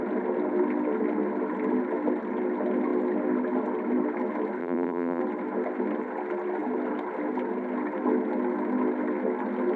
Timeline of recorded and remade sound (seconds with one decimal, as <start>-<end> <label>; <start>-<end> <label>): 0.0-4.6 recorded; 4.6-5.2 remade; 5.2-9.8 recorded